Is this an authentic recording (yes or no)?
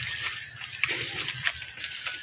yes